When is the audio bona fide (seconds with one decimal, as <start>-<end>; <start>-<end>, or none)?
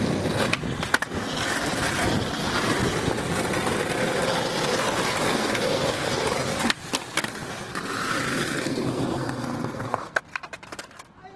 0.0-5.3; 6.1-8.3; 10.2-11.4